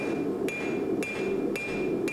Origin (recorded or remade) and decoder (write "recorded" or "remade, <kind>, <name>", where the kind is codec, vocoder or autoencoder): recorded